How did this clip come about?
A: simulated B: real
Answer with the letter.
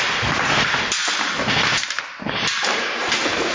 A